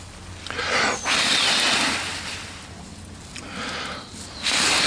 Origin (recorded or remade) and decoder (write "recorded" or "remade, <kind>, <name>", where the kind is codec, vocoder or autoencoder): recorded